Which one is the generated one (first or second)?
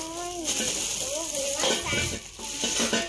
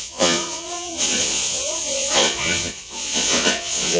second